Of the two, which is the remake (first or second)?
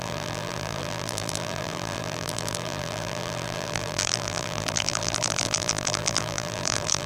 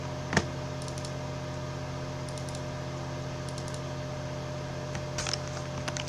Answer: first